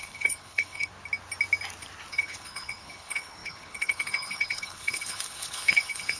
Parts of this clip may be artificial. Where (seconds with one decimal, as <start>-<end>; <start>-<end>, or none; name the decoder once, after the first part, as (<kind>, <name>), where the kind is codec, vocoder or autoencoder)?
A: 0.0-0.9 (codec, HILCodec); 2.1-6.2